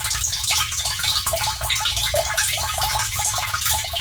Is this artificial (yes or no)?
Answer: yes